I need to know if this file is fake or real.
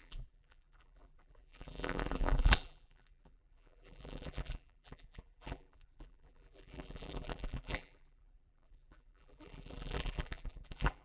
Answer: fake